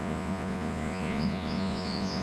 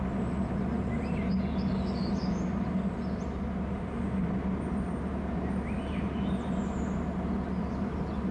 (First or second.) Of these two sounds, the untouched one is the second